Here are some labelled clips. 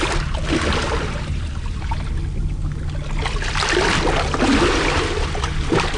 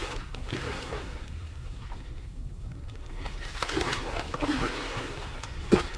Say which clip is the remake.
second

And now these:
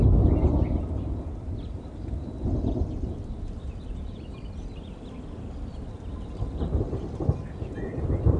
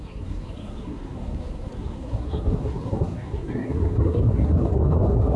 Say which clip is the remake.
second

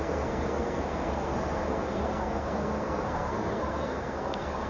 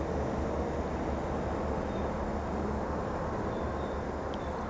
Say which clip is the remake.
first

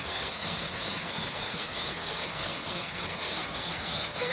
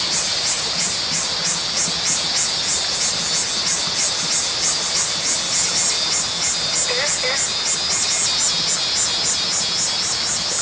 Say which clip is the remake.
first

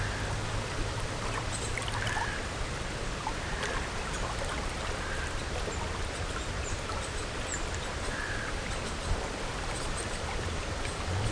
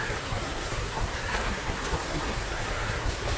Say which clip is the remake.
second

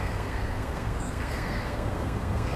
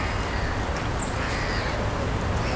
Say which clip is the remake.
first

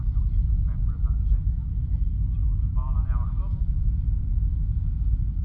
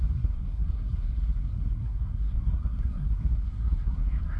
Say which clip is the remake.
second